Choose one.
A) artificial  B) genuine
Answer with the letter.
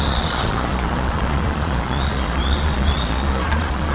A